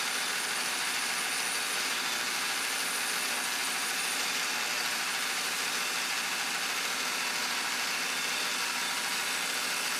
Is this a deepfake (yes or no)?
no